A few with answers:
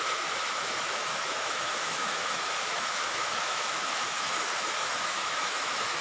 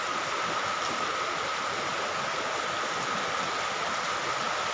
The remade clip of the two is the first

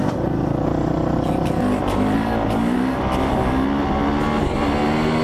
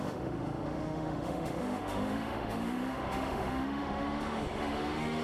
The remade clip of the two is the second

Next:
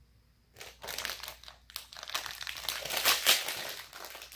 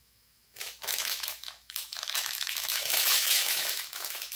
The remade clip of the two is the second